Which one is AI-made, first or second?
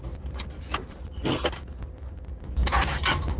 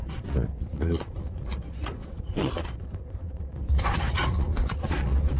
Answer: second